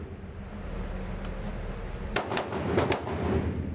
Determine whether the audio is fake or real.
real